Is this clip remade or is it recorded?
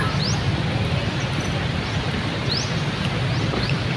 recorded